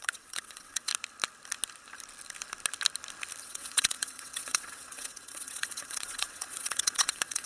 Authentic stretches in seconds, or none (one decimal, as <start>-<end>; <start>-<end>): 0.9-3.4